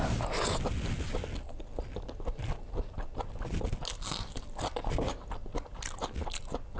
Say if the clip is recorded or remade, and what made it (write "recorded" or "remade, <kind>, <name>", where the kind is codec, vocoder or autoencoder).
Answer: recorded